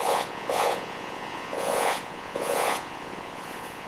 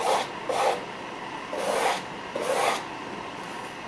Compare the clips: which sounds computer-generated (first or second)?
first